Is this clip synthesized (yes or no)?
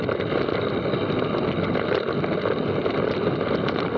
no